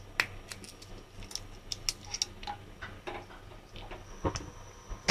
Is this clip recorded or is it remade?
recorded